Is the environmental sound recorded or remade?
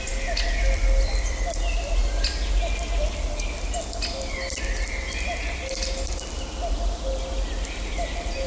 recorded